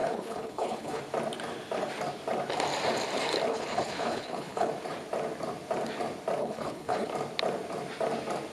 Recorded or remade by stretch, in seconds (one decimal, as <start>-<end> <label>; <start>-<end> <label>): 0.0-1.0 remade; 1.0-3.5 recorded; 3.5-4.7 remade; 4.7-6.4 recorded; 6.4-7.1 remade; 7.1-8.5 recorded

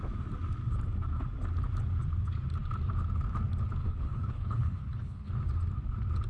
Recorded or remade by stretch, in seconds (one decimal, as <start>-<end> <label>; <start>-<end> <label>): 0.0-3.8 recorded; 3.8-5.3 remade; 5.3-6.3 recorded

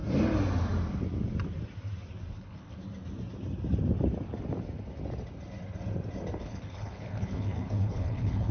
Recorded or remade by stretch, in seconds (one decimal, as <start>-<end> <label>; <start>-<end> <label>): 0.0-2.3 recorded; 2.3-2.8 remade; 2.8-6.4 recorded; 6.4-8.5 remade

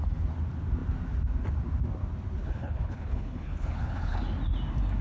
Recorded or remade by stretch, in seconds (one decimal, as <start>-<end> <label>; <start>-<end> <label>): 0.0-2.4 recorded; 2.4-4.2 remade; 4.2-5.0 recorded